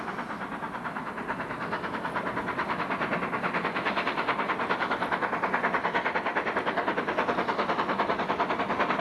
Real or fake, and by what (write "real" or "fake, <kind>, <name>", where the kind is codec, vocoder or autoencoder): real